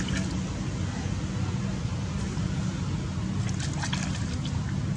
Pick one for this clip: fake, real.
real